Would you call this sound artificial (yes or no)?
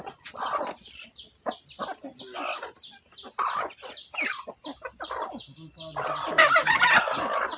no